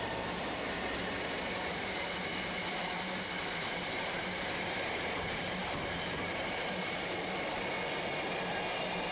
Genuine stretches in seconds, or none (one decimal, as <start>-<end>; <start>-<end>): 0.0-2.8; 7.7-9.1